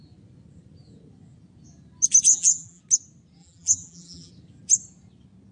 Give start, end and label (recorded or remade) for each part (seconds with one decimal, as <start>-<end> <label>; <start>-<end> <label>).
0.0-2.3 recorded; 2.3-2.8 remade; 2.8-3.4 recorded; 3.4-4.3 remade; 4.3-5.5 recorded